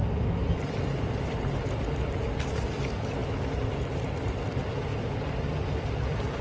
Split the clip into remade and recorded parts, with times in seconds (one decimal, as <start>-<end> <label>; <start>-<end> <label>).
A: 0.0-2.5 remade; 2.5-4.9 recorded; 4.9-6.4 remade